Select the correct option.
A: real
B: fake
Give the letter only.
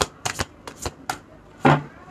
A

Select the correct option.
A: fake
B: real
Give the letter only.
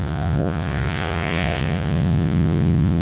A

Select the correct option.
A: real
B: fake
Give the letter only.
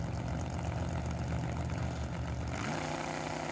A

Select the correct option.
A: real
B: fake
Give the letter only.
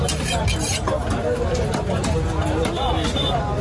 A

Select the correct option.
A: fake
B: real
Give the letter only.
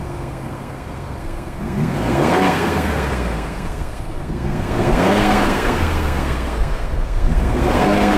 A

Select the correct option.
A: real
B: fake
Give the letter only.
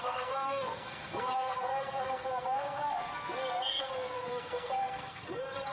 B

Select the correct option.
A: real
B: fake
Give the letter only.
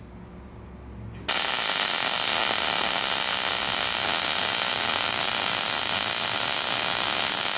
A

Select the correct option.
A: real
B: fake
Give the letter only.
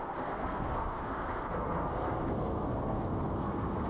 B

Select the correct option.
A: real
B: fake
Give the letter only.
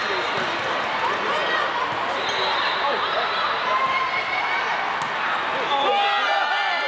A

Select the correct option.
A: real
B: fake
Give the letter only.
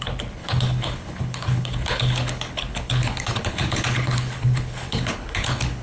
B